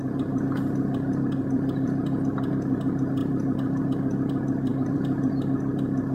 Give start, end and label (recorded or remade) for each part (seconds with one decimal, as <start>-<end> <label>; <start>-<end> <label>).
0.0-4.7 recorded; 4.7-5.3 remade; 5.3-6.1 recorded